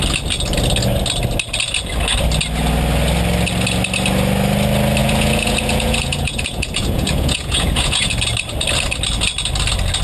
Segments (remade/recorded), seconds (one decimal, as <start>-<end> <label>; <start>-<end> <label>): 0.0-5.0 recorded; 5.0-8.1 remade; 8.1-10.0 recorded